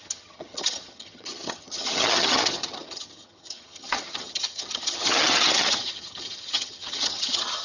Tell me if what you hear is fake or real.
fake